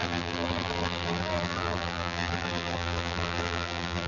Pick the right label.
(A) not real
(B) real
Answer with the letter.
A